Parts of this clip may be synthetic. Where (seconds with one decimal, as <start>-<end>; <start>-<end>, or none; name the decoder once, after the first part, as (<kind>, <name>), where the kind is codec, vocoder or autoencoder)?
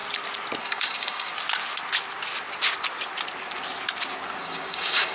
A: 0.6-1.3 (codec, DAC); 4.4-5.1